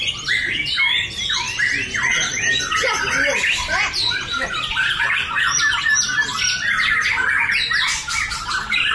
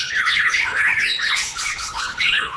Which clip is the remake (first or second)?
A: second